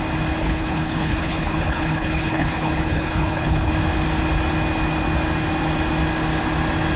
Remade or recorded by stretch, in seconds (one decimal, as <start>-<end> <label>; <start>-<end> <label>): 0.0-0.4 recorded; 0.4-3.7 remade; 3.7-7.0 recorded